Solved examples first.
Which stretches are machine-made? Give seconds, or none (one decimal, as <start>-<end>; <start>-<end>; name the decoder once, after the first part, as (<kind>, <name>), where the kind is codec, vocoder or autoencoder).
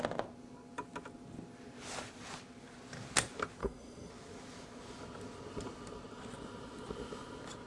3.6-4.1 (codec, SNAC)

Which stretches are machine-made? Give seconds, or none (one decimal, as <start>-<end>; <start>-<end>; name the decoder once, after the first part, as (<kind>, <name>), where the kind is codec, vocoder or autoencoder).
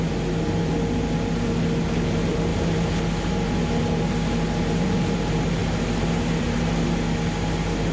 none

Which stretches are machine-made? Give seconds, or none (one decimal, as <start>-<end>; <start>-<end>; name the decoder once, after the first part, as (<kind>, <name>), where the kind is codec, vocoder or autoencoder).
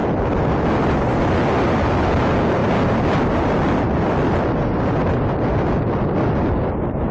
none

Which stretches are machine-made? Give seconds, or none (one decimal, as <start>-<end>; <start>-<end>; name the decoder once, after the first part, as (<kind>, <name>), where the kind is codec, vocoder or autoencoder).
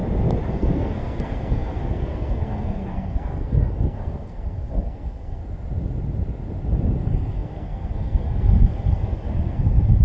0.5-5.4 (codec, SNAC); 7.0-10.0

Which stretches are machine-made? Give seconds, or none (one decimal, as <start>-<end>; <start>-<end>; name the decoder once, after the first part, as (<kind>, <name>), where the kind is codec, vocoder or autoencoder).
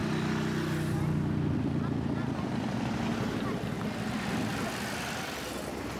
none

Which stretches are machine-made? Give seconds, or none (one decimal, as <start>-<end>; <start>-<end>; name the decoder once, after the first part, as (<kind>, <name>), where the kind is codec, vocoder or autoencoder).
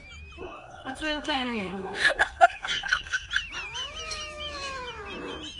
0.4-3.3 (codec, SNAC)